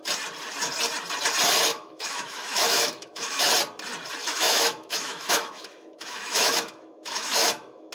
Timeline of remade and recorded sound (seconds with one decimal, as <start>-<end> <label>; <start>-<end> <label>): 0.0-1.7 recorded; 1.7-3.5 remade; 3.5-4.2 recorded; 4.2-7.9 remade

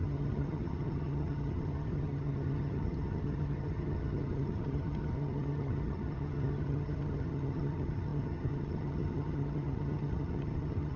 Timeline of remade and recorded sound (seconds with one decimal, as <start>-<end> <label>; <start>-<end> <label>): 0.0-11.0 remade